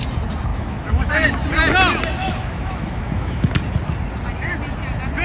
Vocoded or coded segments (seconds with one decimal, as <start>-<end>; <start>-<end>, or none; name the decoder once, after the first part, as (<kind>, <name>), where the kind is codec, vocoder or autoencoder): 0.5-1.1 (autoencoder, DAC-VAE); 2.2-3.5